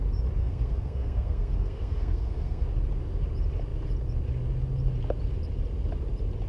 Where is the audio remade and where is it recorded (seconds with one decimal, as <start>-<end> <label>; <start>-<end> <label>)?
0.0-0.4 recorded; 0.4-2.6 remade; 2.6-6.5 recorded